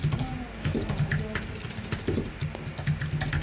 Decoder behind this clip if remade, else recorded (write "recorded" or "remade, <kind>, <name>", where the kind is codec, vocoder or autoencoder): recorded